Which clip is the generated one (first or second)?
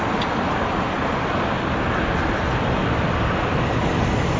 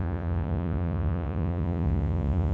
second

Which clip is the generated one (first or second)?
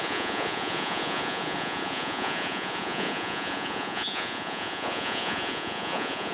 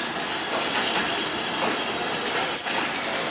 first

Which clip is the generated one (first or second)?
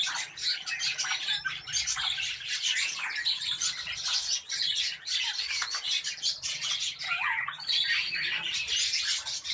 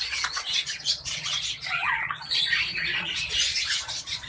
second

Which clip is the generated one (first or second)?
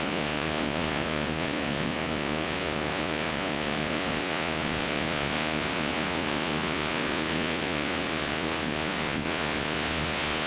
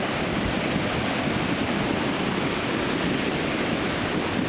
first